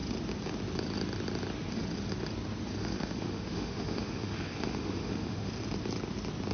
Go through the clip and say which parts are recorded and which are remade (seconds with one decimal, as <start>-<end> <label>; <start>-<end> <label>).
0.0-2.8 recorded; 2.8-5.5 remade; 5.5-6.5 recorded